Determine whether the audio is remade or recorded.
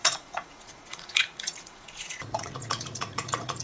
remade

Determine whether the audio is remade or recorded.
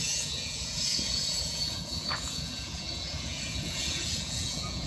remade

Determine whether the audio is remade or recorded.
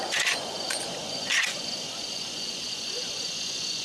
remade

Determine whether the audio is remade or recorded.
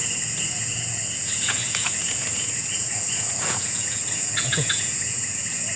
remade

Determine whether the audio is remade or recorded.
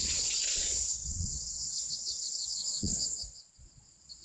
remade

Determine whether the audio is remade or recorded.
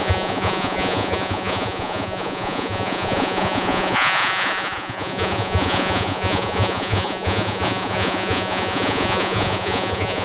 remade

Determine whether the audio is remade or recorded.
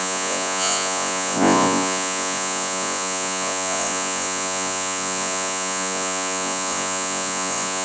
remade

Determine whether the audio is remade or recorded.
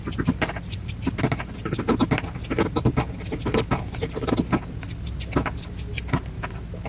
recorded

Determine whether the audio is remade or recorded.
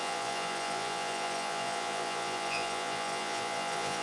remade